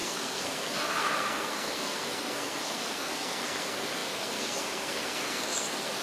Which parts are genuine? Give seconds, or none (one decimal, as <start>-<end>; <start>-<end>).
none